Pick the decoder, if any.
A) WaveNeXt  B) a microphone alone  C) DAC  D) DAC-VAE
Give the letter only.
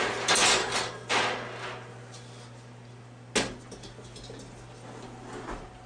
B